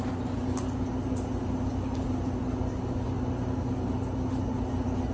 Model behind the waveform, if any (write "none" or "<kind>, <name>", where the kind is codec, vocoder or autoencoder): none